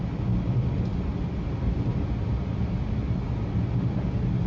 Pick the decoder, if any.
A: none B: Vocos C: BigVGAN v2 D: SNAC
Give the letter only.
A